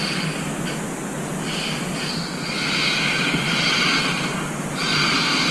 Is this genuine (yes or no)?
yes